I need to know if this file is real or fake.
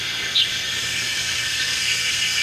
fake